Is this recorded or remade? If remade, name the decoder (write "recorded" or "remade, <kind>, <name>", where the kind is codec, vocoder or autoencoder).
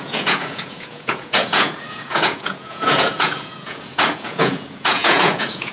remade, vocoder, Vocos